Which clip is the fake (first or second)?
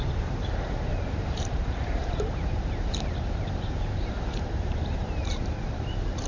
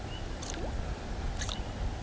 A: first